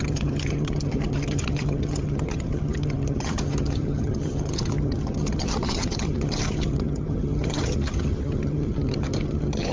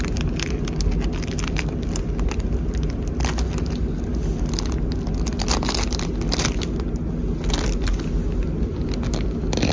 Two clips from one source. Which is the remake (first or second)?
first